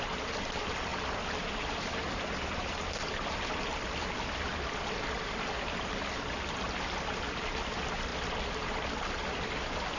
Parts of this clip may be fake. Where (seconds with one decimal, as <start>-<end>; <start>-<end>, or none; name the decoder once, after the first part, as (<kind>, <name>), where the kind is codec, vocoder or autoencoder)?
none